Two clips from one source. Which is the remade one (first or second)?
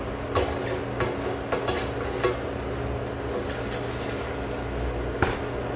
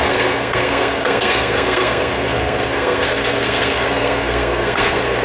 second